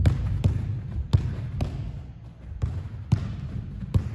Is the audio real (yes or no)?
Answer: yes